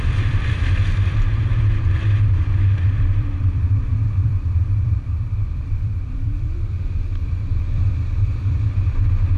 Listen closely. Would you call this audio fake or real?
fake